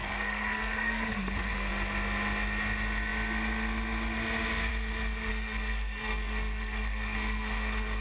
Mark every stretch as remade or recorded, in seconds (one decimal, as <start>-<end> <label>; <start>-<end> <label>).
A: 0.0-1.7 remade; 1.7-5.3 recorded; 5.3-8.0 remade